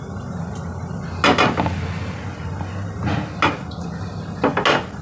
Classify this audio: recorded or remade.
recorded